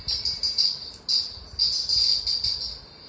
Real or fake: real